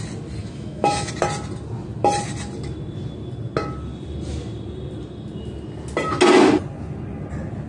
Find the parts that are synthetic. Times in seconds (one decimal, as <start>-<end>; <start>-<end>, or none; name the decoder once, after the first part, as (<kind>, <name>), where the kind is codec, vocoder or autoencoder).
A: 0.4-1.1 (autoencoder, DAC-VAE)